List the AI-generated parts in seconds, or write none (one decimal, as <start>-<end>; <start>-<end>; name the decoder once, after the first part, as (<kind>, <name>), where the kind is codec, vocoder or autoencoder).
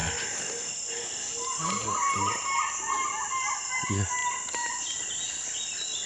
4.2-4.8 (vocoder, BigVGAN v2)